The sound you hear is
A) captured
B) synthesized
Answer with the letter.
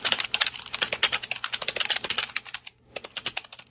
A